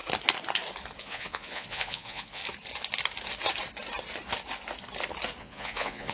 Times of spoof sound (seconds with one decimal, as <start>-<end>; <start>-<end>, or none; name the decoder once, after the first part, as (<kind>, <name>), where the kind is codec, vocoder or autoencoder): 1.0-2.4 (vocoder, Vocos); 5.4-6.1